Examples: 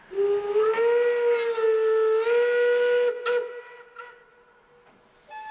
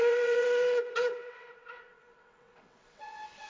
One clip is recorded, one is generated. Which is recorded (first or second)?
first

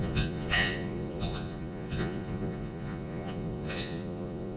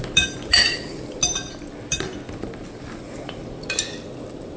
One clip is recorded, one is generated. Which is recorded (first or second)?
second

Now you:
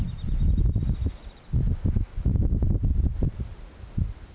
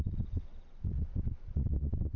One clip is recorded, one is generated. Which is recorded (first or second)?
first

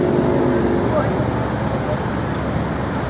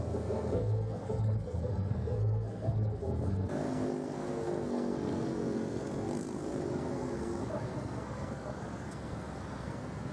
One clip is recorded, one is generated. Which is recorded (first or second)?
first